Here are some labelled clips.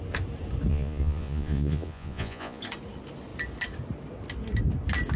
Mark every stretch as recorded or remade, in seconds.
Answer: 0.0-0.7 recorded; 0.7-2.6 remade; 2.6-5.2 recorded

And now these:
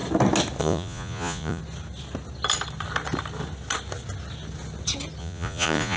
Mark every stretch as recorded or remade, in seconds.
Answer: 0.0-0.6 recorded; 0.6-1.6 remade; 1.6-5.2 recorded; 5.2-6.0 remade